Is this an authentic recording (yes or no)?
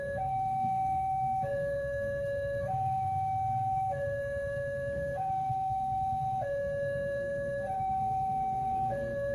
no